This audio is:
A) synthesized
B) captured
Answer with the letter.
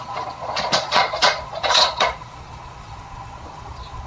A